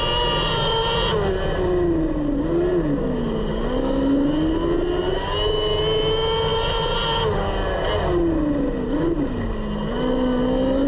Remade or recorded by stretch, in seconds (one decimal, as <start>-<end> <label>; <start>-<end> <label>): 0.0-10.9 recorded